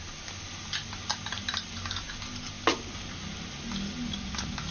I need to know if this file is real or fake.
real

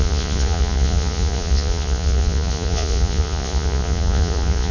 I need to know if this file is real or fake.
fake